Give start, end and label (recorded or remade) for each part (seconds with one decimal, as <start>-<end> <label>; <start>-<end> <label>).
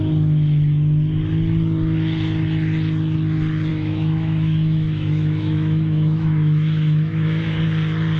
0.0-3.7 recorded; 3.7-7.6 remade; 7.6-8.2 recorded